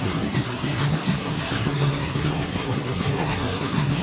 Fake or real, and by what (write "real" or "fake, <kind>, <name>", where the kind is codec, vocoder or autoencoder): fake, codec, SNAC